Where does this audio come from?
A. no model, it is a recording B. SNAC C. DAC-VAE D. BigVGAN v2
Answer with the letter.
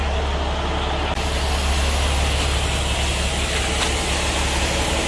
A